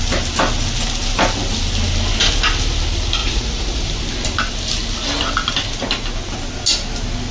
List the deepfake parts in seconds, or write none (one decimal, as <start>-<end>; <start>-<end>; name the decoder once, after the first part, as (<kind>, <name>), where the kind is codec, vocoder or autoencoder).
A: 3.2-3.8 (vocoder, Vocos)

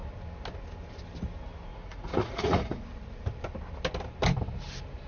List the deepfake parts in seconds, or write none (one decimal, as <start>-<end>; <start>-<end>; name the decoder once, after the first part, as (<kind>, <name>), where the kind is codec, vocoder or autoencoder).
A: 1.7-2.8 (vocoder, Vocos)

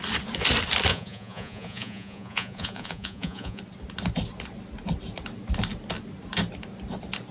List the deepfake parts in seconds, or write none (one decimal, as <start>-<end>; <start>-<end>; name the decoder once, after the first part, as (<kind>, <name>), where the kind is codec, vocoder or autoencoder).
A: 0.9-3.6 (vocoder, Vocos)

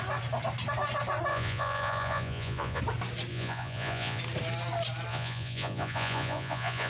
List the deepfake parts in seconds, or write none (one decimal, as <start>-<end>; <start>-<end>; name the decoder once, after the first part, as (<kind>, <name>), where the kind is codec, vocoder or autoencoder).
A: 1.3-2.8 (vocoder, Vocos); 3.3-4.2; 5.1-6.9